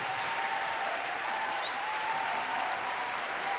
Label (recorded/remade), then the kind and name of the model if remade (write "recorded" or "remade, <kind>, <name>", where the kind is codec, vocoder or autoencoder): remade, vocoder, BigVGAN v2